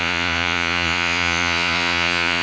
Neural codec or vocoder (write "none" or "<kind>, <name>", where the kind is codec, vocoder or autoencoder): vocoder, Vocos